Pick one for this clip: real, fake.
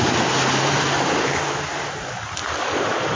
fake